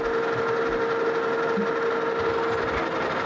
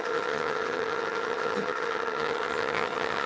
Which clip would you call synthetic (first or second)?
second